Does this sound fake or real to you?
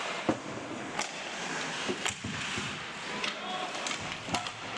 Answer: real